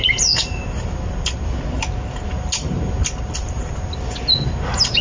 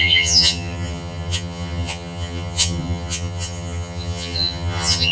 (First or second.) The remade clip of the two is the second